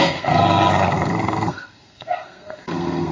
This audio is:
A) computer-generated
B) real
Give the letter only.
A